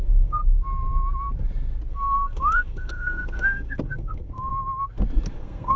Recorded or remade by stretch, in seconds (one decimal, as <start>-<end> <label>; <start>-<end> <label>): 0.0-0.4 remade; 0.4-1.9 recorded; 1.9-4.5 remade; 4.5-5.3 recorded; 5.3-5.8 remade